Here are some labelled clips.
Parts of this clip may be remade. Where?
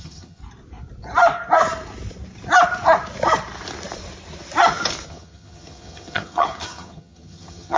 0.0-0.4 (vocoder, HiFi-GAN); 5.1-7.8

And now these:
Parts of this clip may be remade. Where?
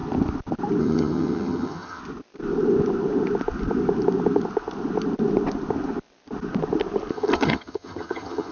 0.8-2.0 (vocoder, HiFi-GAN); 7.1-8.5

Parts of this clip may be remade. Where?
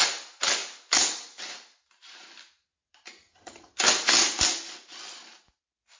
3.2-3.8 (vocoder, HiFi-GAN)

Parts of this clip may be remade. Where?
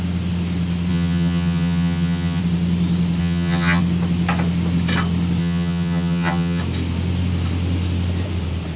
0.9-2.4 (vocoder, HiFi-GAN); 3.2-3.8; 5.4-6.6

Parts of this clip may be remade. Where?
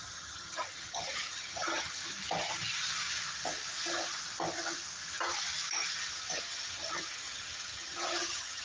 0.0-2.0 (vocoder, HiFi-GAN); 6.1-8.6